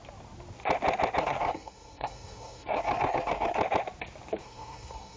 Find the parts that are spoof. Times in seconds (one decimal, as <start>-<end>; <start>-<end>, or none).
1.2-3.6; 4.4-5.2